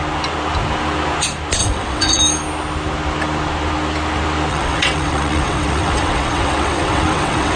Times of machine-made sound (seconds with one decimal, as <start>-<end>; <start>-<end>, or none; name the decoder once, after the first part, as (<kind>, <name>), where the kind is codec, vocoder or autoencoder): 1.6-2.2 (vocoder, WaveNeXt); 4.5-7.6